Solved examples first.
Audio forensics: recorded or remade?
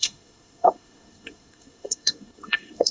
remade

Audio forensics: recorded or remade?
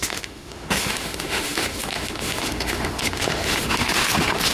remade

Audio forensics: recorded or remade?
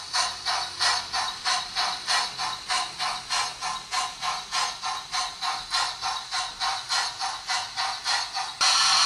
recorded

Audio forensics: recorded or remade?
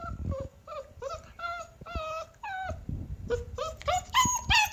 recorded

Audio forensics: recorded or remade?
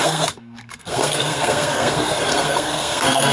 remade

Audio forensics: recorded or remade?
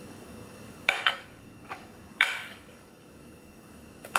remade